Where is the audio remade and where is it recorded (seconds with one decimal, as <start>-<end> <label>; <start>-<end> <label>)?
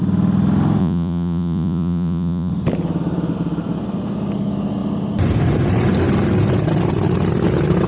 0.0-0.8 recorded; 0.8-2.5 remade; 2.5-7.9 recorded